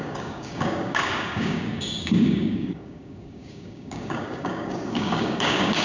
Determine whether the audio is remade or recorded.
remade